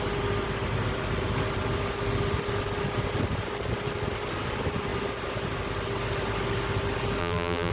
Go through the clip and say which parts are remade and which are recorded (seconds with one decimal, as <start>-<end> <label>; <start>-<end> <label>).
0.0-7.2 recorded; 7.2-7.7 remade